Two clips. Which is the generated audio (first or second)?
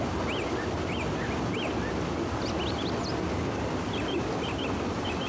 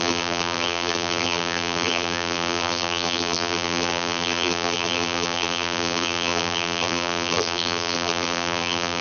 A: second